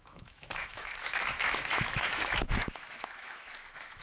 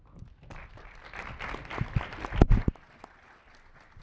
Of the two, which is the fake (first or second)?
first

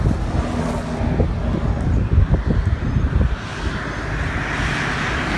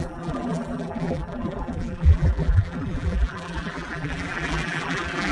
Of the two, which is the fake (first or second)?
second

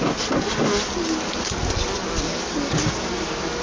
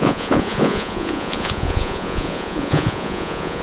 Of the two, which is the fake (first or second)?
second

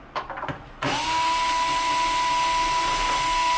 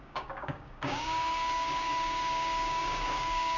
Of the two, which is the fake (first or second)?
second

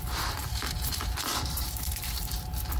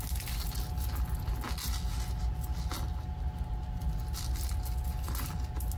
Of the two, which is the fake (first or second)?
first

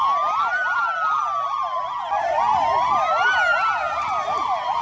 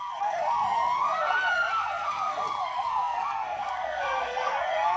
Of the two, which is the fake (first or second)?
second